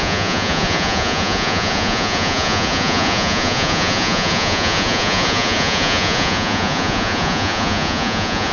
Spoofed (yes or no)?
yes